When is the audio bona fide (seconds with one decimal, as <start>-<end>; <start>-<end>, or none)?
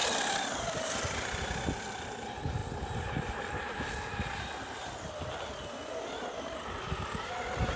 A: 0.0-7.8